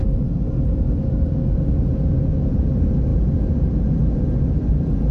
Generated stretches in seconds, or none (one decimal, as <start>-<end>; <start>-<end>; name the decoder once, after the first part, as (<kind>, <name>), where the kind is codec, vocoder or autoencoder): none